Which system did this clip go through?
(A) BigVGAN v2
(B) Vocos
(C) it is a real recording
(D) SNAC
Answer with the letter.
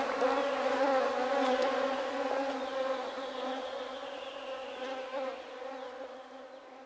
C